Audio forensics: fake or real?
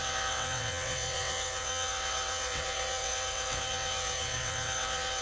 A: fake